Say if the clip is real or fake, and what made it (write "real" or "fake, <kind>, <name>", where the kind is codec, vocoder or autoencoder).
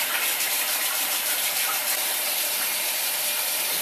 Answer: fake, vocoder, BigVGAN v2